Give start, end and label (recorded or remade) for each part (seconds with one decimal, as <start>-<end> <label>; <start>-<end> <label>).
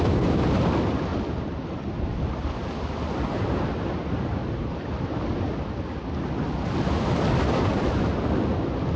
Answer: 0.0-4.4 recorded; 4.4-5.2 remade; 5.2-9.0 recorded